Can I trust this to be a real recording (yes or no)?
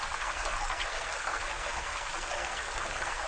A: no